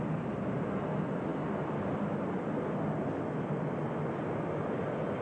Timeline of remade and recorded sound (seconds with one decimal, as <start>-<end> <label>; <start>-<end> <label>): 0.0-5.2 recorded